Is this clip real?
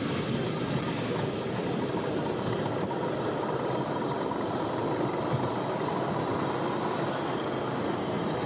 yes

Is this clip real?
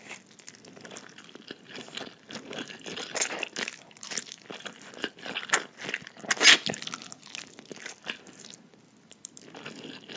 yes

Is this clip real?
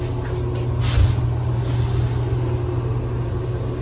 yes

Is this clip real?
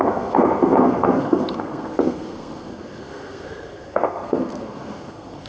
no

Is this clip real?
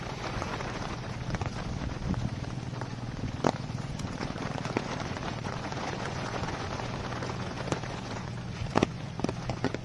no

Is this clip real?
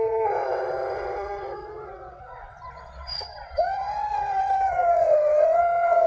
no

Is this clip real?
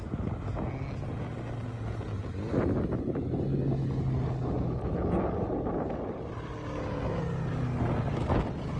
yes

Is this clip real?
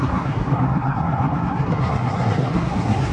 no